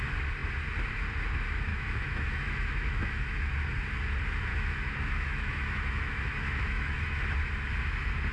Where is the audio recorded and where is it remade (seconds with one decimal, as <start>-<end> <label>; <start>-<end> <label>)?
0.0-1.7 recorded; 1.7-3.5 remade; 3.5-4.5 recorded; 4.5-7.2 remade; 7.2-8.3 recorded